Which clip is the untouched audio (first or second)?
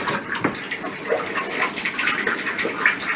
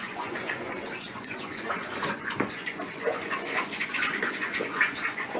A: first